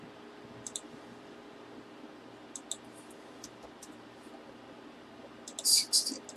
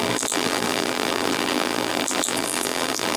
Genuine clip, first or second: first